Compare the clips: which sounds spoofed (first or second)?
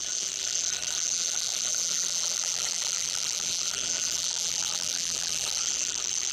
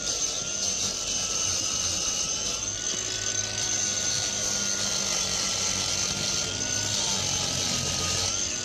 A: first